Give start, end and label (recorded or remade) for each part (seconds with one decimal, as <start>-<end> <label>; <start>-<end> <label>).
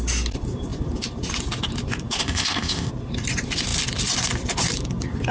0.0-2.2 recorded; 2.2-2.9 remade; 2.9-5.3 recorded